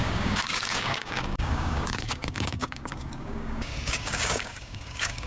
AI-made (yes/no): yes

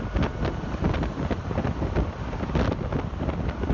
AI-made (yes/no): no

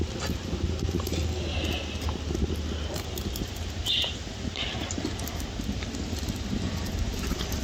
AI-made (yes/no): yes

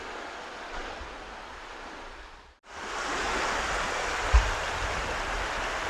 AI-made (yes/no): no